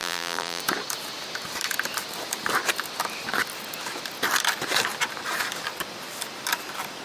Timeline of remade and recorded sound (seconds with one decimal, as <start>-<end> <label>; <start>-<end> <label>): 0.0-0.6 remade; 0.6-7.0 recorded